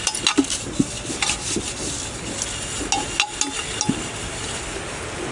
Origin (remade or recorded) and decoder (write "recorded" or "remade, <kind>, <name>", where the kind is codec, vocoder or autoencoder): recorded